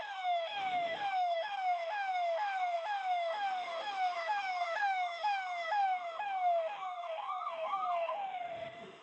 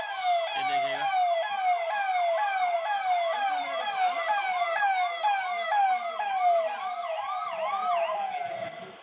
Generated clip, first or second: first